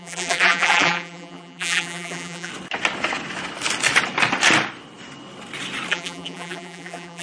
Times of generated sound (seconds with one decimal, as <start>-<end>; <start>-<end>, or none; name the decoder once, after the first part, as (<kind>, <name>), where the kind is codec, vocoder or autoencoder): 0.0-2.5 (vocoder, BigVGAN v2); 5.9-7.2